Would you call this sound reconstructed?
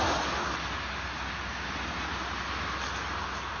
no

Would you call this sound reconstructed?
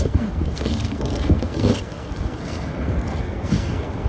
yes